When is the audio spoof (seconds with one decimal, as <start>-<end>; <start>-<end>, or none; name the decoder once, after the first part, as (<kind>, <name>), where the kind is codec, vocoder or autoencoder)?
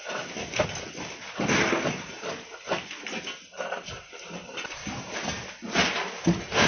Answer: 4.8-5.8 (vocoder, BigVGAN v2)